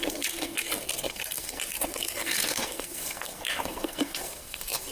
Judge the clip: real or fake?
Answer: fake